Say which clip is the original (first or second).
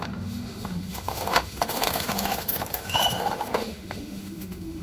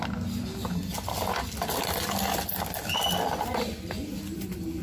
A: second